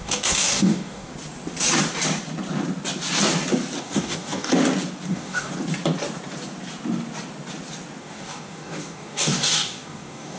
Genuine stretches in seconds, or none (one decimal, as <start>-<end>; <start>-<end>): 1.1-3.8; 4.5-5.1; 5.5-8.0